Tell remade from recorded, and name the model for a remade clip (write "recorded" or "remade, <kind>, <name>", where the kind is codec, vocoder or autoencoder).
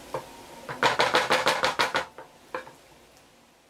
recorded